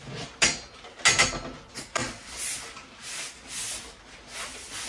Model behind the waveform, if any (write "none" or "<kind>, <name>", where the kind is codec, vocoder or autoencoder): none